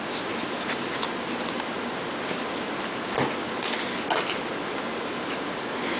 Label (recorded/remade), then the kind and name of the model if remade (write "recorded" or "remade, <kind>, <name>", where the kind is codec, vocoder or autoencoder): recorded